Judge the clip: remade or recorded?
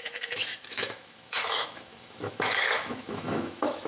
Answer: remade